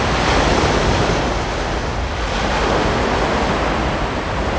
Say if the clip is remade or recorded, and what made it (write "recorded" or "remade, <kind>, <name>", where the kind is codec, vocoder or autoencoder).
recorded